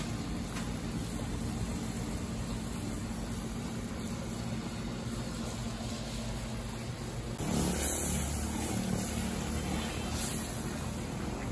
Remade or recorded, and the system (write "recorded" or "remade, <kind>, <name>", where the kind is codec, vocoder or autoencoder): recorded